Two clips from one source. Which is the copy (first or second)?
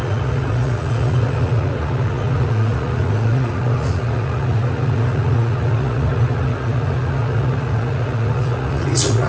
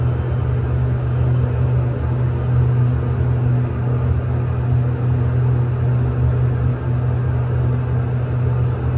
first